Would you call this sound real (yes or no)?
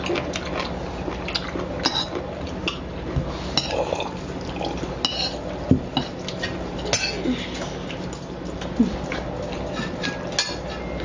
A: yes